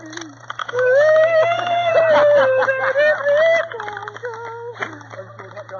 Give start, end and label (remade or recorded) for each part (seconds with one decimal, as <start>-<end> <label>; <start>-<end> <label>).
0.0-0.6 recorded; 0.6-1.9 remade; 1.9-5.8 recorded